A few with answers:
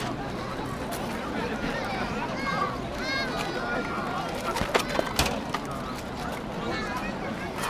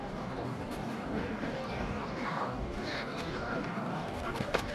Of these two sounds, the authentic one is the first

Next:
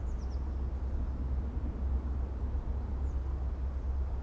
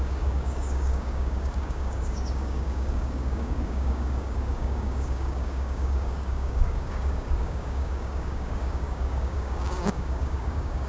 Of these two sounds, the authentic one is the first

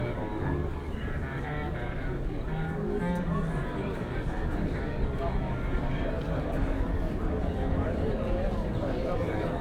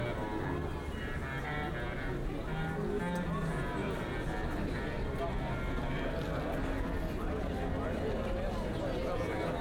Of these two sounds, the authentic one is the second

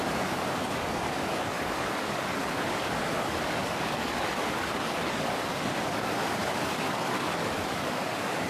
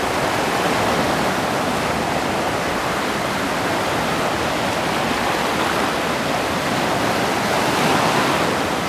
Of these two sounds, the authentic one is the second